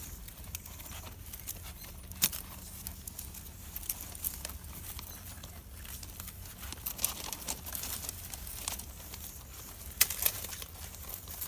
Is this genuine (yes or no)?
yes